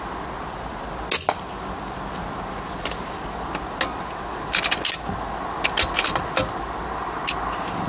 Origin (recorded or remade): recorded